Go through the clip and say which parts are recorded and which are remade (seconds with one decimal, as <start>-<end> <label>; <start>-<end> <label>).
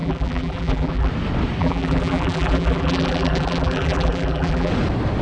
0.0-1.1 remade; 1.1-1.6 recorded; 1.6-4.7 remade; 4.7-5.2 recorded